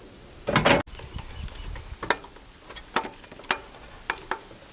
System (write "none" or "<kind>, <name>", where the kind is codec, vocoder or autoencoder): none